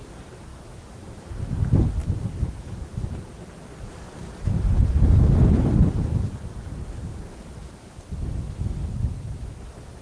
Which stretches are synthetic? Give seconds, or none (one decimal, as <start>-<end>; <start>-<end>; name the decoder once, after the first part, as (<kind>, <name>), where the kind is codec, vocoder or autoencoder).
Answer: 0.5-1.2 (autoencoder, DAC-VAE); 2.0-3.1